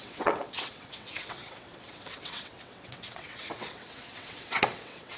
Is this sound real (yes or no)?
no